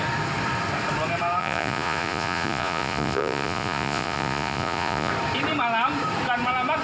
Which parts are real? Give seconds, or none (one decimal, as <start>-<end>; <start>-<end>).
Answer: 0.0-1.4; 5.1-6.8